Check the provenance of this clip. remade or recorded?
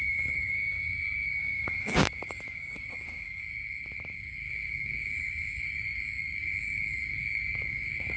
remade